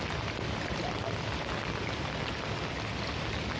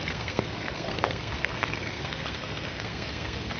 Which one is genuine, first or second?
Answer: first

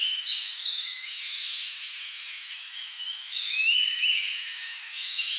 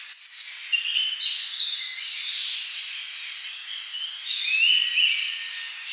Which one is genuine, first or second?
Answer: second